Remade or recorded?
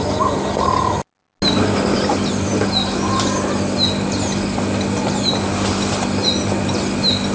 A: recorded